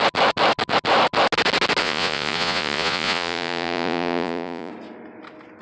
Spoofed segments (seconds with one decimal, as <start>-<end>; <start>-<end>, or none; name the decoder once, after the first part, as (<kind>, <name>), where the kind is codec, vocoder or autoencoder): 1.8-4.7 (vocoder, Vocos)